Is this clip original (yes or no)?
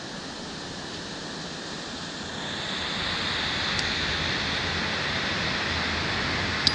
yes